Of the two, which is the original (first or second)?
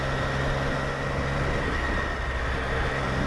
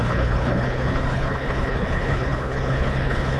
first